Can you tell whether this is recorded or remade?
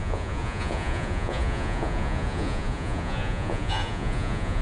remade